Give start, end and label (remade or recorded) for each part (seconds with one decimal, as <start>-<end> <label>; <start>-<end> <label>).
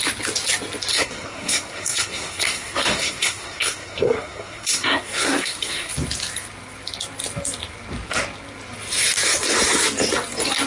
0.0-0.9 recorded; 0.9-5.9 remade; 5.9-10.7 recorded